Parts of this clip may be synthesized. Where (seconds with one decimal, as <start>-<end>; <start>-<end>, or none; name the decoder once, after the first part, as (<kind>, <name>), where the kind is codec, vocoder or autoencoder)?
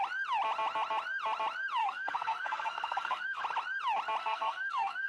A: 1.8-3.4 (codec, SNAC); 4.2-5.1